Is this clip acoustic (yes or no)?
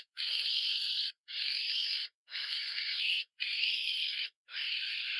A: no